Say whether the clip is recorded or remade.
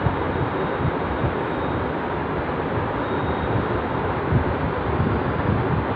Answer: recorded